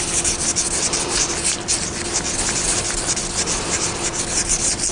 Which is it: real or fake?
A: real